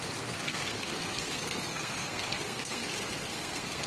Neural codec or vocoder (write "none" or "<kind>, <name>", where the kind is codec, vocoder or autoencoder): codec, SNAC